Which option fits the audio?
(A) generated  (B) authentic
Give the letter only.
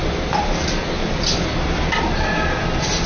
B